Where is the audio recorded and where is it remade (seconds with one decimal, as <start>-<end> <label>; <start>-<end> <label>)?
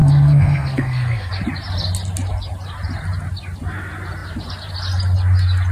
0.0-1.3 remade; 1.3-5.7 recorded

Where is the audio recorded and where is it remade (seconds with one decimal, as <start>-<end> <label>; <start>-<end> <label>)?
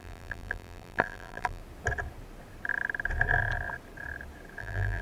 0.0-1.6 remade; 1.6-4.6 recorded; 4.6-5.0 remade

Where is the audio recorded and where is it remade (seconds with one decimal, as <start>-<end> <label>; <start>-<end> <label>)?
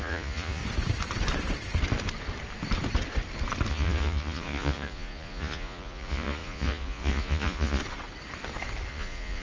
0.0-0.6 remade; 0.6-3.7 recorded; 3.7-7.8 remade; 7.8-8.9 recorded; 8.9-9.4 remade